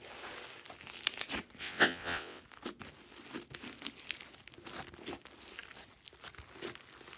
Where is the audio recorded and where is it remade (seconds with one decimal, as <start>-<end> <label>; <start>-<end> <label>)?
0.0-1.6 recorded; 1.6-2.4 remade; 2.4-7.2 recorded